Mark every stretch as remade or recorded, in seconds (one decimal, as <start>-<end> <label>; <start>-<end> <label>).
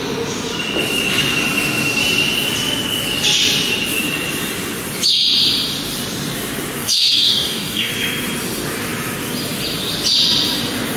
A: 0.0-6.8 recorded; 6.8-7.9 remade; 7.9-11.0 recorded